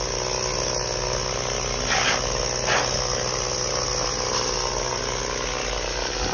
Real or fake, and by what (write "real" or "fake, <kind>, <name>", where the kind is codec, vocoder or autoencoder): real